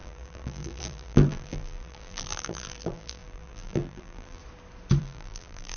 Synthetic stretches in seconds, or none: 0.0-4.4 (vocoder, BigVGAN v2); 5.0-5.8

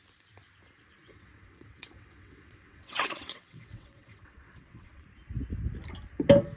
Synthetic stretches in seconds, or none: 1.0-5.0 (vocoder, WaveNeXt)

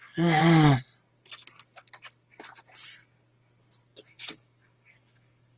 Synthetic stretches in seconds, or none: 0.0-0.4 (codec, DAC); 3.8-5.6

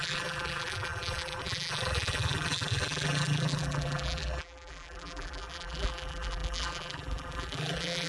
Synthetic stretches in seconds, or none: 0.0-8.1 (vocoder, BigVGAN v2)

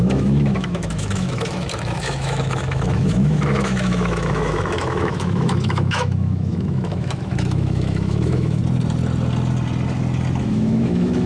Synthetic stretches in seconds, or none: 0.0-8.6 (autoencoder, DAC-VAE); 10.4-11.3

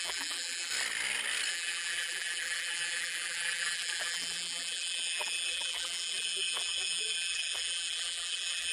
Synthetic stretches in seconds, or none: 0.0-0.7 (vocoder, BigVGAN v2); 1.5-8.7

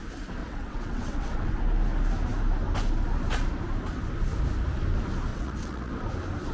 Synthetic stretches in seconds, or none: 0.4-1.6 (vocoder, WaveNeXt); 5.3-5.9

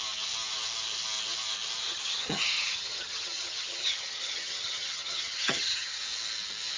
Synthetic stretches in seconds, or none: 1.9-6.0 (vocoder, HiFi-GAN)